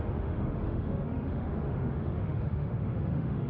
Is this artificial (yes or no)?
yes